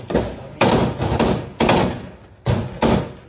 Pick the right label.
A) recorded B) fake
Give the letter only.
A